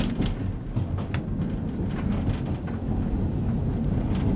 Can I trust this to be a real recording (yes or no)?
yes